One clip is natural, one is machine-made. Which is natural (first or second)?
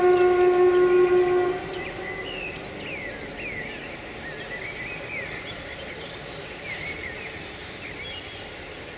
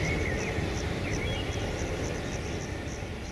first